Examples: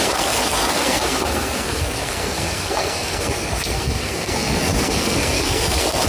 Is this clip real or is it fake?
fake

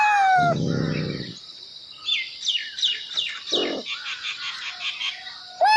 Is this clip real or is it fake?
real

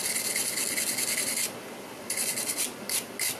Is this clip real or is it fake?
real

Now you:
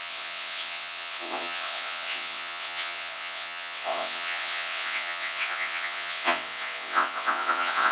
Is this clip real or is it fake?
fake